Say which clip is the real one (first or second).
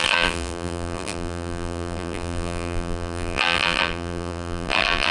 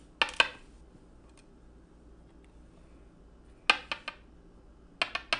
second